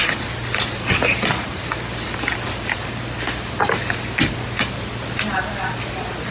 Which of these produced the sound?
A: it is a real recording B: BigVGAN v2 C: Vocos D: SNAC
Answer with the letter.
A